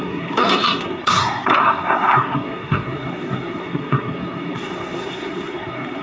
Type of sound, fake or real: fake